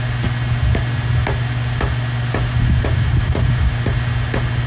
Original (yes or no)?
yes